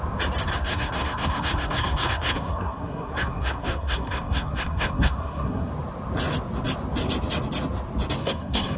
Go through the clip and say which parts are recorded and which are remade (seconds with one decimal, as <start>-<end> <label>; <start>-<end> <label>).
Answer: 0.0-0.5 recorded; 0.5-5.7 remade; 5.7-8.2 recorded; 8.2-8.8 remade